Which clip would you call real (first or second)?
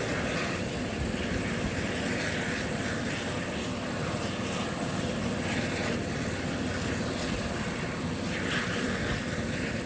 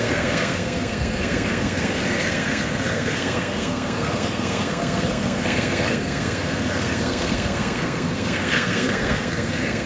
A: first